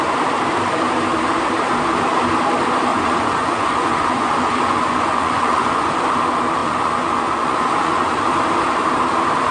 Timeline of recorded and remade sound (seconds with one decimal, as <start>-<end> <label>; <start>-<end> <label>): 0.0-2.9 recorded; 2.9-5.9 remade; 5.9-6.6 recorded; 6.6-8.2 remade; 8.2-9.5 recorded